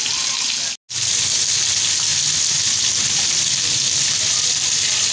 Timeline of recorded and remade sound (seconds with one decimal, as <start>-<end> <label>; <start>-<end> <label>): 0.0-5.1 recorded